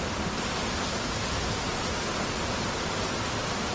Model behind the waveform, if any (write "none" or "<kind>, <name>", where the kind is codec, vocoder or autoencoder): none